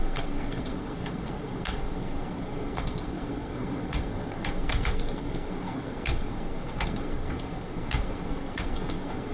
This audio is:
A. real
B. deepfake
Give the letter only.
B